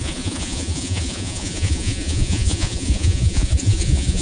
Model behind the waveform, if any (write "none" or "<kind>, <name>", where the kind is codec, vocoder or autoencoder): vocoder, Vocos